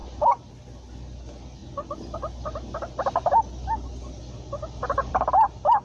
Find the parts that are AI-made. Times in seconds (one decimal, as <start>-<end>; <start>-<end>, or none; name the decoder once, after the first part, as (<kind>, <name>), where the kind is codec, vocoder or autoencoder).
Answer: none